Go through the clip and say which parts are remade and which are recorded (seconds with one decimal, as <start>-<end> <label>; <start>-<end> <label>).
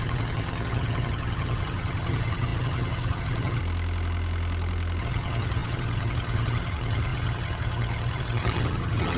0.0-3.6 remade; 3.6-5.0 recorded; 5.0-9.2 remade